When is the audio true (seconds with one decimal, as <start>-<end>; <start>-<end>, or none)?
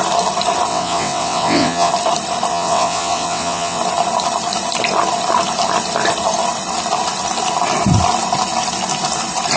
0.0-0.7; 1.9-2.5; 3.8-9.6